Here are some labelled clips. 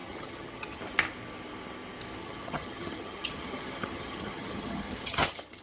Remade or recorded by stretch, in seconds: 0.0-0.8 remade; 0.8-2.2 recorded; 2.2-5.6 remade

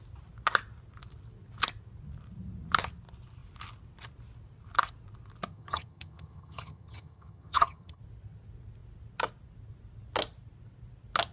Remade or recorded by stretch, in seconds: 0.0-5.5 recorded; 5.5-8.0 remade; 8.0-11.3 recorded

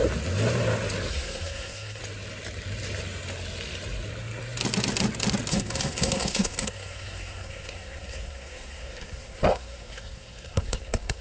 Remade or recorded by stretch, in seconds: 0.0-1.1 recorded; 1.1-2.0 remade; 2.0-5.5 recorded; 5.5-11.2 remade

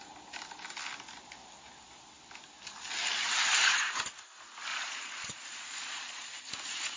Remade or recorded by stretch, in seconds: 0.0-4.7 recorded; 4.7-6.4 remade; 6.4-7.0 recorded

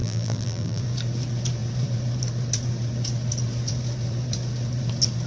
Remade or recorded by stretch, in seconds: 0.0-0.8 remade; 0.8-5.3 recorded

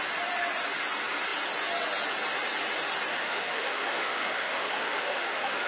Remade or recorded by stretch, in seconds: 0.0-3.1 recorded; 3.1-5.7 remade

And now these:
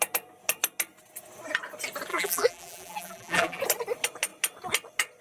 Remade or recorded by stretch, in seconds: 0.0-2.1 recorded; 2.1-3.6 remade; 3.6-5.2 recorded